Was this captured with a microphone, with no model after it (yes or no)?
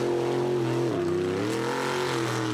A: yes